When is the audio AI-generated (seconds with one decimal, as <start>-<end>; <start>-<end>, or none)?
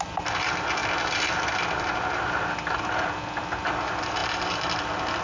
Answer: none